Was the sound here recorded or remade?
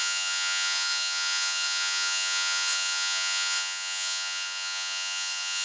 remade